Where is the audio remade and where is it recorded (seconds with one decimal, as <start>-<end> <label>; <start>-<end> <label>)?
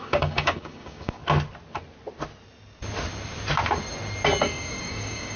0.0-1.2 remade; 1.2-4.4 recorded; 4.4-5.4 remade